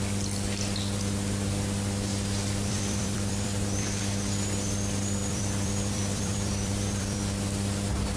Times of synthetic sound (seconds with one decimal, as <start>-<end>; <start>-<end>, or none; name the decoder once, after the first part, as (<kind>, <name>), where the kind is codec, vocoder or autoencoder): 2.1-4.0 (vocoder, BigVGAN v2); 5.2-7.2

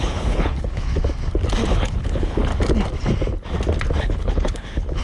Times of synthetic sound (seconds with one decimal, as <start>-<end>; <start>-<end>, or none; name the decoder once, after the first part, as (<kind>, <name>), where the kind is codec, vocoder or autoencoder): 0.0-1.0 (codec, HILCodec); 1.7-2.5; 4.0-5.0

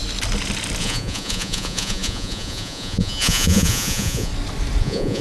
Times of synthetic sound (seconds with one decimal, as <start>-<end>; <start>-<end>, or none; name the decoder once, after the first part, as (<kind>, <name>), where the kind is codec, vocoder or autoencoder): 0.8-4.3 (vocoder, Vocos); 4.8-5.2

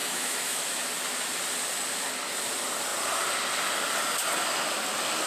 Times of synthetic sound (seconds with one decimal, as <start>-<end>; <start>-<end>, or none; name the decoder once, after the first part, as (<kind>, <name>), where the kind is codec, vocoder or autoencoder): 0.0-0.8 (autoencoder, DAC-VAE)

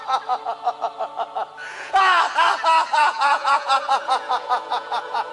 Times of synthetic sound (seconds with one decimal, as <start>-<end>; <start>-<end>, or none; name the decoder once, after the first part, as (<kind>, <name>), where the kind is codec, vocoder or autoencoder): 1.6-2.2 (vocoder, Vocos); 2.9-5.3

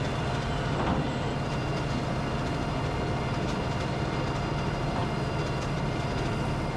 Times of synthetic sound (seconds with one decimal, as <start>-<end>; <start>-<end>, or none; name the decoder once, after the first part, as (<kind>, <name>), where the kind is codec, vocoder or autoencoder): none

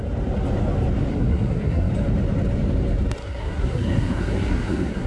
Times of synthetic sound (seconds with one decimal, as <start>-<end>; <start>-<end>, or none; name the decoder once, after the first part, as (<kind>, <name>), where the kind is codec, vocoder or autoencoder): 1.1-1.9 (codec, SNAC); 3.2-5.1

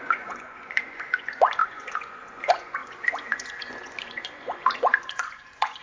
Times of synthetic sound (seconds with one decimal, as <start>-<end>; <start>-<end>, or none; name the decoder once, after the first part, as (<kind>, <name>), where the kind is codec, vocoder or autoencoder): 0.0-5.8 (vocoder, Vocos)